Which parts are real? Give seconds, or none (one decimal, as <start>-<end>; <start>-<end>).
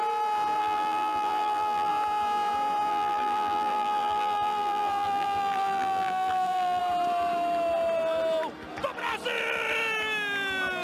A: 0.0-0.6; 1.9-2.9; 6.8-10.8